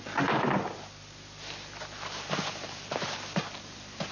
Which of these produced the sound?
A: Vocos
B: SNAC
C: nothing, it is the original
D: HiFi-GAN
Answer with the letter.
C